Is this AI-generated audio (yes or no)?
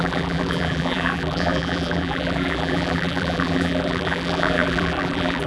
yes